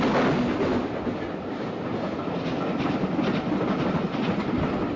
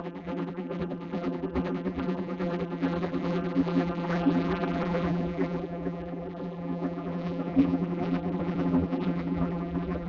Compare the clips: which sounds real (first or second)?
first